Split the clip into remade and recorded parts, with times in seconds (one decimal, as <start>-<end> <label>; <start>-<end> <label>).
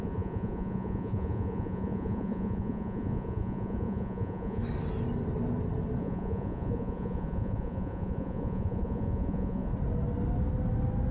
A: 0.0-4.6 remade; 4.6-6.0 recorded; 6.0-9.7 remade; 9.7-11.1 recorded